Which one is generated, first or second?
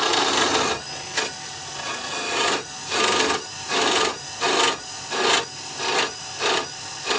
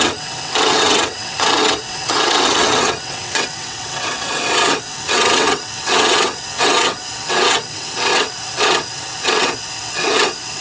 second